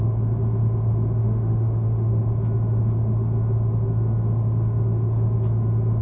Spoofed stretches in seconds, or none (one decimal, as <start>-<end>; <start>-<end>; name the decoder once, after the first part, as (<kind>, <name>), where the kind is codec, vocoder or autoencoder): 1.2-2.2 (autoencoder, DAC-VAE)